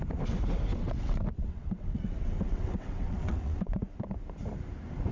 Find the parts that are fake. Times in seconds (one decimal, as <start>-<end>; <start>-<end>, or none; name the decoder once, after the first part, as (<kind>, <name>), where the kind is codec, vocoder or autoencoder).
0.7-3.8 (vocoder, WaveNeXt)